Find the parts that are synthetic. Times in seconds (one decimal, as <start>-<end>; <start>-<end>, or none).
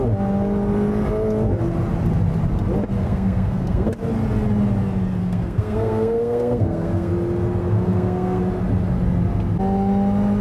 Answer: 3.0-3.9; 5.2-7.1; 7.6-8.4